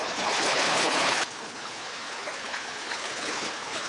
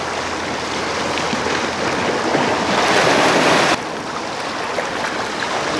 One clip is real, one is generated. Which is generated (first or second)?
first